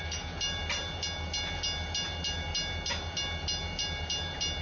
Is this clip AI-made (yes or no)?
no